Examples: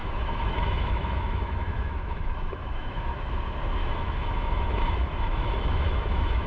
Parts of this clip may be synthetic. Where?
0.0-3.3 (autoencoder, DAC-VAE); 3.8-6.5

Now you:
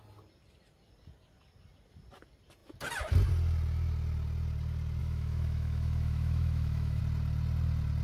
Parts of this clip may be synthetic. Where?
5.0-7.0 (autoencoder, DAC-VAE)